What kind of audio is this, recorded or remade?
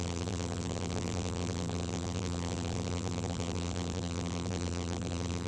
remade